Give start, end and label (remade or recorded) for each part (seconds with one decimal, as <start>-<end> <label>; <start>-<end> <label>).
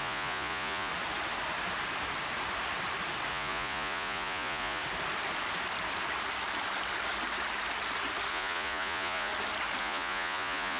0.0-0.9 remade; 0.9-3.3 recorded; 3.3-4.8 remade; 4.8-8.3 recorded; 8.3-9.3 remade; 9.3-9.8 recorded; 9.8-10.8 remade